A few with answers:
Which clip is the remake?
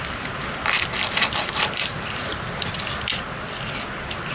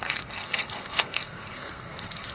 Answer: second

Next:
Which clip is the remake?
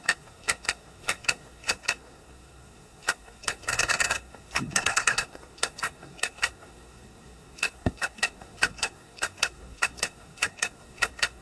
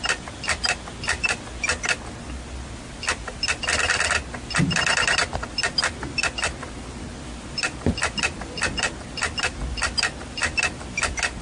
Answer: first